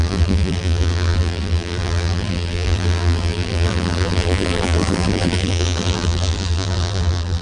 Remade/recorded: remade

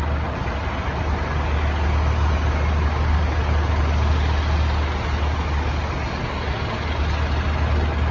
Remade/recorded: recorded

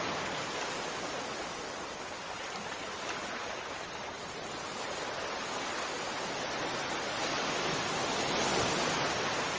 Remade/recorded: recorded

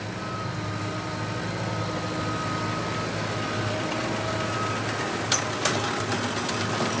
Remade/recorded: recorded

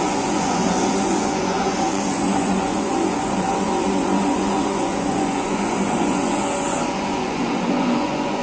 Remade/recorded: remade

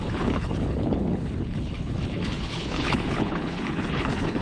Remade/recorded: remade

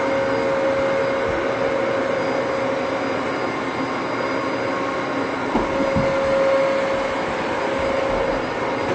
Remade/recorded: recorded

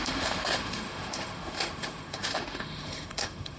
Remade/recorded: remade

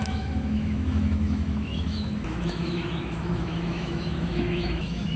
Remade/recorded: remade